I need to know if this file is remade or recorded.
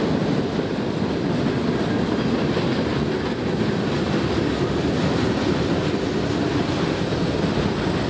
recorded